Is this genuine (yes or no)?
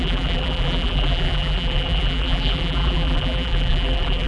no